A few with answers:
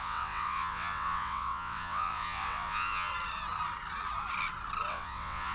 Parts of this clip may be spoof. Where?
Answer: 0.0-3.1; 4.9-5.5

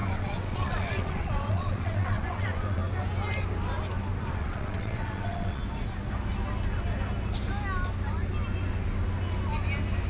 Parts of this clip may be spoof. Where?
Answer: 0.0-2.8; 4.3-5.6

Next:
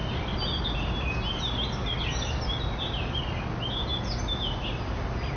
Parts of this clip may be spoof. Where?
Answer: none